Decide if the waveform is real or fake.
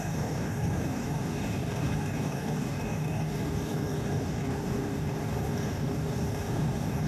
fake